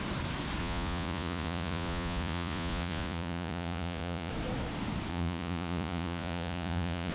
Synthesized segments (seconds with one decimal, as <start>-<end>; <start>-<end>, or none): 0.6-4.3; 5.1-7.1